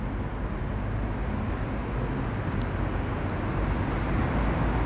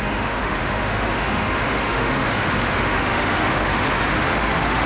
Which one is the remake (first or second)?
second